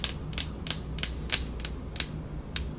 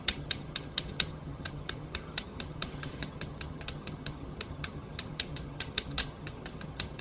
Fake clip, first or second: second